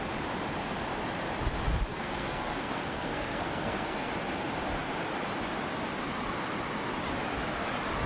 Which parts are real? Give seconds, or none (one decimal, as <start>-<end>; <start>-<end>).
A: 0.0-1.9; 4.1-8.1